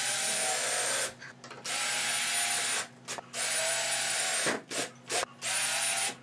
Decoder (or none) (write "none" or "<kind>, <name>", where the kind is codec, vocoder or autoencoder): none